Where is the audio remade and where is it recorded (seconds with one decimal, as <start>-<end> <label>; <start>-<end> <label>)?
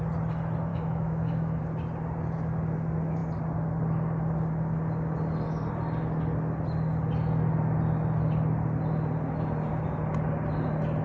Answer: 0.0-0.7 recorded; 0.7-1.6 remade; 1.6-11.0 recorded